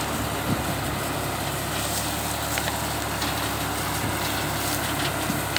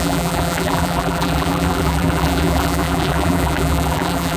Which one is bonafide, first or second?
first